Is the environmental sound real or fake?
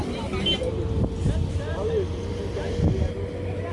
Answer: real